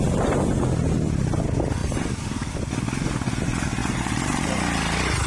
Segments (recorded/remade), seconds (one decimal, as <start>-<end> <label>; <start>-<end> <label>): 0.0-1.8 recorded; 1.8-2.5 remade; 2.5-3.8 recorded; 3.8-4.4 remade; 4.4-5.3 recorded